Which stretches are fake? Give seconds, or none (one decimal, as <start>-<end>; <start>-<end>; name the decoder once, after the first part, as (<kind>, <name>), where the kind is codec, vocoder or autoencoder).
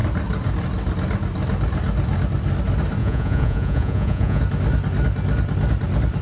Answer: 3.0-4.4 (vocoder, Vocos)